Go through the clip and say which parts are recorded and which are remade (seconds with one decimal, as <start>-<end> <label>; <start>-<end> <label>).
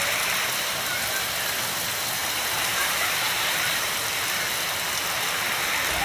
0.0-2.2 recorded; 2.2-4.0 remade; 4.0-6.0 recorded